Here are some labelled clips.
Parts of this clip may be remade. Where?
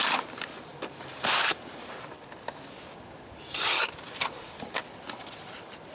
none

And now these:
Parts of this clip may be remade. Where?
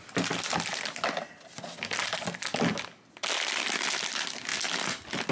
none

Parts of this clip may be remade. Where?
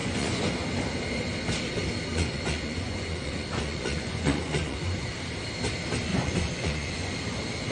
0.0-0.5 (vocoder, Vocos); 2.1-5.1; 6.1-7.1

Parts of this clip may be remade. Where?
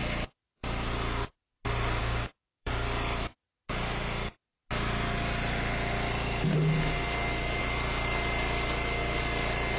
2.0-2.7 (codec, DAC)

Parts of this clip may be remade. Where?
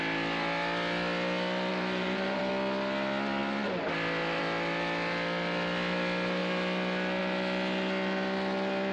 1.7-2.5 (vocoder, BigVGAN v2)